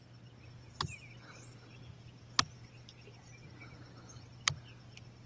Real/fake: real